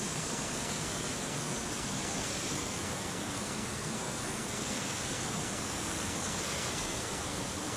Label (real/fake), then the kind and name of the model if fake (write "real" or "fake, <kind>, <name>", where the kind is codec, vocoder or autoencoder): fake, codec, SNAC